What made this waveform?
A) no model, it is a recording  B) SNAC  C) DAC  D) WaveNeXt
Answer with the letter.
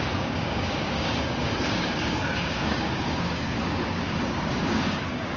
C